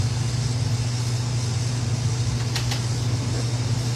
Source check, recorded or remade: recorded